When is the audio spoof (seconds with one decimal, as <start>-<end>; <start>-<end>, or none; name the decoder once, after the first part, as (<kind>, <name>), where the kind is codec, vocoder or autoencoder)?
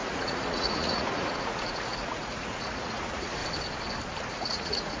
0.0-3.4 (vocoder, Vocos); 4.3-5.0